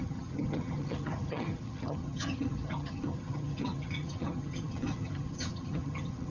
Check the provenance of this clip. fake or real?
fake